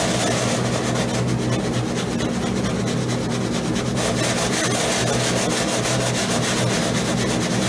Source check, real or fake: real